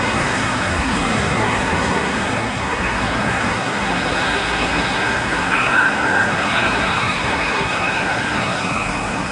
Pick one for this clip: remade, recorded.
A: remade